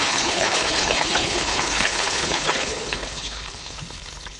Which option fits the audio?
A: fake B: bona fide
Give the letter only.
A